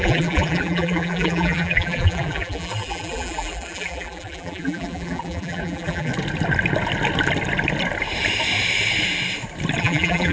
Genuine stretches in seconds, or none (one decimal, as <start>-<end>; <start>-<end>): 6.1-9.8